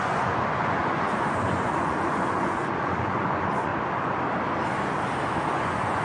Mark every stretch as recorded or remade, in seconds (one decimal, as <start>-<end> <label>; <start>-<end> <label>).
0.0-3.7 remade; 3.7-5.5 recorded; 5.5-6.0 remade